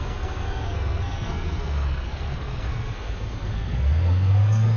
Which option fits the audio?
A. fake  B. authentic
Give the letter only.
A